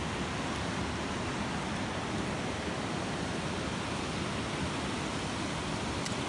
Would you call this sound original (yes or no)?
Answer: yes